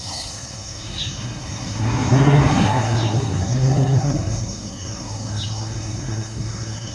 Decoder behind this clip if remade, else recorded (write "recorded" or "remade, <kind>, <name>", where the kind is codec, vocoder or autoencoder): remade, codec, SNAC